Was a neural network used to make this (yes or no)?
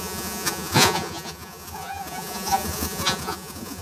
yes